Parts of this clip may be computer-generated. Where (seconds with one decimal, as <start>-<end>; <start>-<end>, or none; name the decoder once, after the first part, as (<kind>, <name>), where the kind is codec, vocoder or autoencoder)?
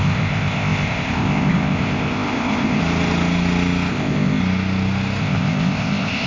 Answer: 0.0-2.8 (codec, ZipCodec); 3.9-4.4; 5.2-6.3